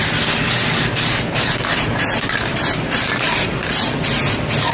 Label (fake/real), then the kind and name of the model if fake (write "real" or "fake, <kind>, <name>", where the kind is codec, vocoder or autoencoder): fake, vocoder, BigVGAN v2